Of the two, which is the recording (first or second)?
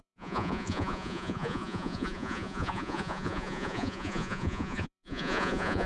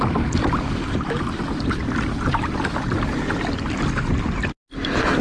second